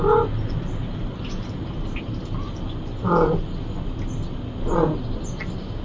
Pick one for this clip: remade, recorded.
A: recorded